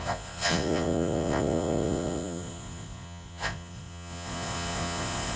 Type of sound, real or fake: fake